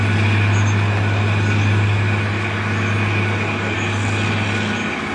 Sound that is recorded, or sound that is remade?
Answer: recorded